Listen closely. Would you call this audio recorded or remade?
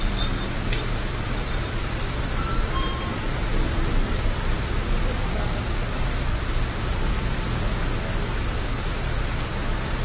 remade